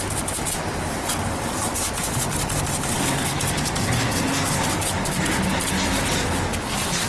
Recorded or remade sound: recorded